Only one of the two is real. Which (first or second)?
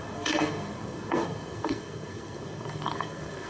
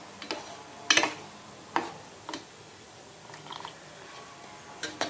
second